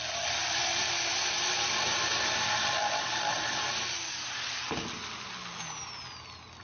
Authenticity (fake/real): real